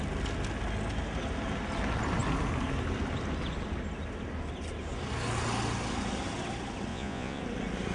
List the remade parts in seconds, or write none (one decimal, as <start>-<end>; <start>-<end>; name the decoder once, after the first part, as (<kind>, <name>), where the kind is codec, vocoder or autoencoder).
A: 6.9-7.4 (vocoder, Vocos)